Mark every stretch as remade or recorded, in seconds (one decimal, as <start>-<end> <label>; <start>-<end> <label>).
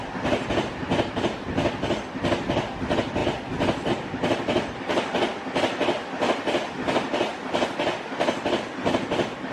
0.0-9.5 recorded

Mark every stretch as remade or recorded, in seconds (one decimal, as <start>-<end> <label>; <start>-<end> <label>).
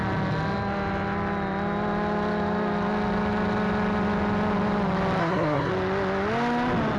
0.0-5.2 recorded; 5.2-5.7 remade; 5.7-7.0 recorded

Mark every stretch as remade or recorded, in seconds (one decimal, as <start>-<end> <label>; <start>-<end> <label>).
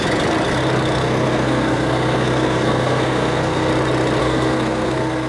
0.0-1.0 recorded; 1.0-3.7 remade; 3.7-4.2 recorded; 4.2-5.3 remade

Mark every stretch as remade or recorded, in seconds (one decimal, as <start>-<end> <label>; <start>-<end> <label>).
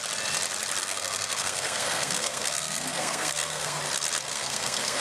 0.0-0.8 recorded; 0.8-3.8 remade; 3.8-4.3 recorded; 4.3-5.0 remade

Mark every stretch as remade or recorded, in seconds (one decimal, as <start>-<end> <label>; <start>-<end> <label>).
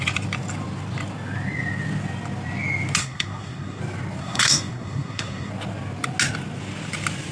0.0-3.0 recorded; 3.0-3.8 remade; 3.8-4.2 recorded; 4.2-5.5 remade; 5.5-7.3 recorded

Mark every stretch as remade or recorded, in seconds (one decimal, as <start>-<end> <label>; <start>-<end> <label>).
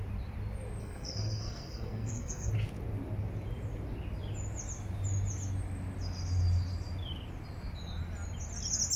0.0-0.8 recorded; 0.8-2.5 remade; 2.5-9.0 recorded